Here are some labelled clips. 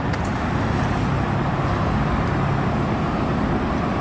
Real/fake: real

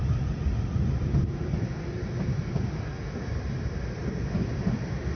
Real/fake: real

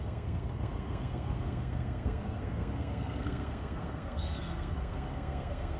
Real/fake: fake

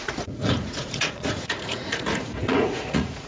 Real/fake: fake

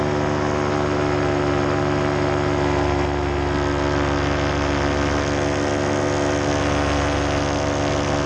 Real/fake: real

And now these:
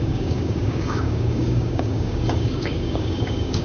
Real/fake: fake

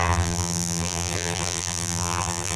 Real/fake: fake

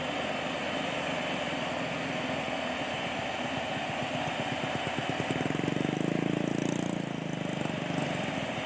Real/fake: real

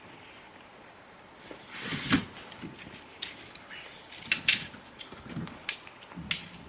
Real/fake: real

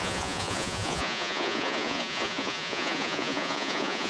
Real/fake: fake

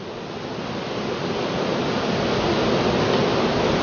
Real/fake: real